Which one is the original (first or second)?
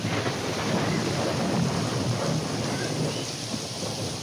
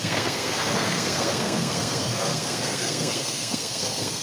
first